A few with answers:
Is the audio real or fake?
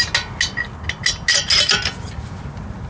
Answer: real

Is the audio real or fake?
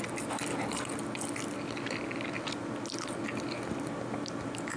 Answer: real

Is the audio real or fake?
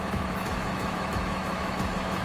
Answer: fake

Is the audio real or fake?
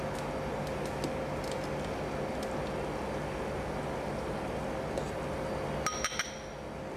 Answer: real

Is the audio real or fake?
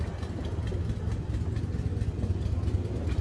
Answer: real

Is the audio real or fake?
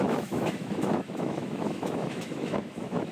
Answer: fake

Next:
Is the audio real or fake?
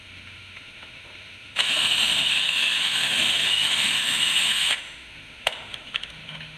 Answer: fake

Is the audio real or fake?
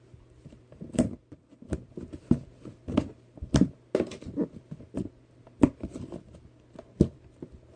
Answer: real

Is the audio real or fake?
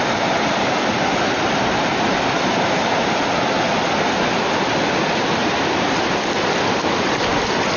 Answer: real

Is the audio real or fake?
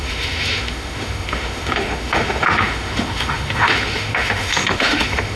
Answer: fake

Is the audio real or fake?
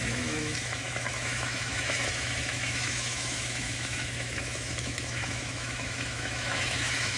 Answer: fake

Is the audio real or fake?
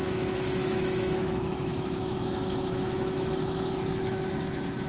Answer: fake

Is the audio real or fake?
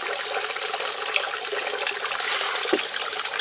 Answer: real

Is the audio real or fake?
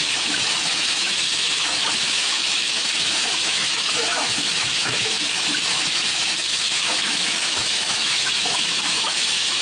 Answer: fake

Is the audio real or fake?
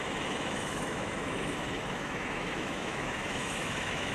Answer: fake